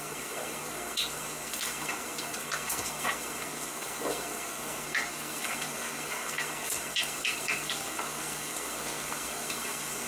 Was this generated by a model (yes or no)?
yes